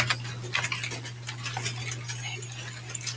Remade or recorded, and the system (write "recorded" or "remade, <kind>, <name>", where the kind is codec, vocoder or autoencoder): recorded